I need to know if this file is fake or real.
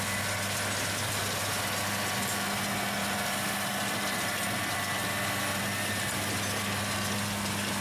real